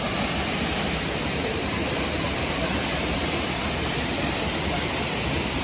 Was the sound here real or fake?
real